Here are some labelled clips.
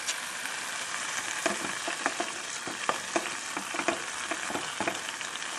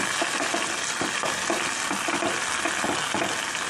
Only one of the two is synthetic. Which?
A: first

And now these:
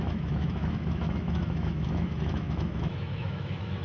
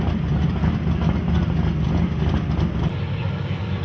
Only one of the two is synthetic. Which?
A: first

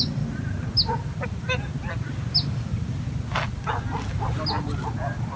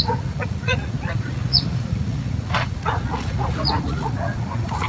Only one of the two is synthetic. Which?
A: second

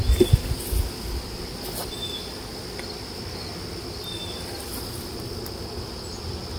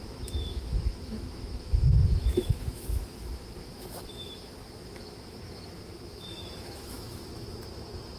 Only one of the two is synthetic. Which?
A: second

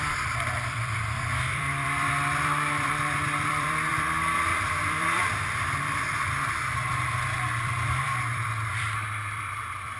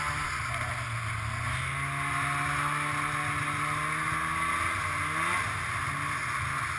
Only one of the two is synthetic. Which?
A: first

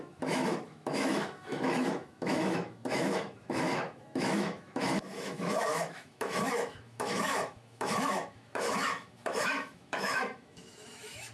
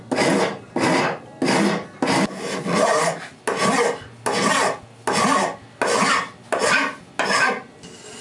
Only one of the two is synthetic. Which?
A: first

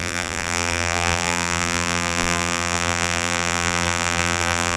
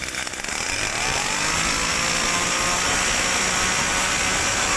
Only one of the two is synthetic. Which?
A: first